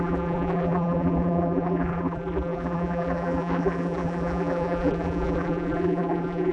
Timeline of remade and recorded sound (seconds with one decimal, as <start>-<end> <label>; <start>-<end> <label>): 0.0-6.5 remade